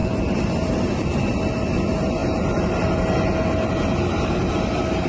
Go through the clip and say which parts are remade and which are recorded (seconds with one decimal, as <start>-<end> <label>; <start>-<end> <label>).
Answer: 0.0-1.2 remade; 1.2-5.1 recorded